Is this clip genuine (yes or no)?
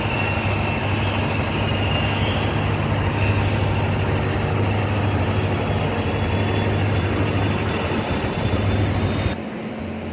yes